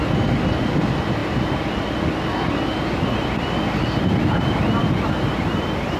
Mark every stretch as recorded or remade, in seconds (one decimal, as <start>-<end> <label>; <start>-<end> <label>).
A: 0.0-6.0 recorded